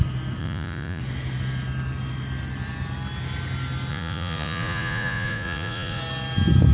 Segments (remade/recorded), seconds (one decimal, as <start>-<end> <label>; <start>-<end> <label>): 0.0-0.4 recorded; 0.4-1.0 remade; 1.0-3.9 recorded; 3.9-6.0 remade; 6.0-6.7 recorded